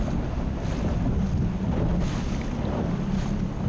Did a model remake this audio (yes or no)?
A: no